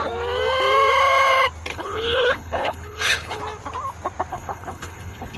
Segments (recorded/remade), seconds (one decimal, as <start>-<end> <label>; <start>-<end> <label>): 0.0-1.7 recorded; 1.7-3.4 remade; 3.4-4.3 recorded; 4.3-5.4 remade